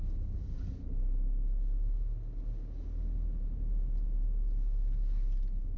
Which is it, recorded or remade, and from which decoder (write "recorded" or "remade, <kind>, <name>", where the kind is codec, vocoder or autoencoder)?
recorded